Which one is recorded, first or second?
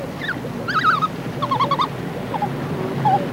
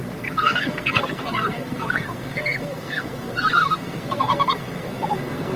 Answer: first